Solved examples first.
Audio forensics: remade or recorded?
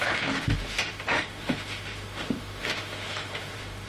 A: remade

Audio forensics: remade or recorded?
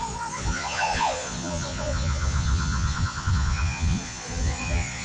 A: remade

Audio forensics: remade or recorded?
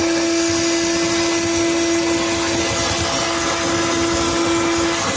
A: recorded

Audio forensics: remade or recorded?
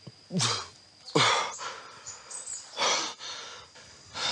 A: recorded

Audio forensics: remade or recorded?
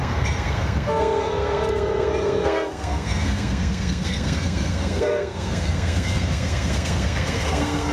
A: remade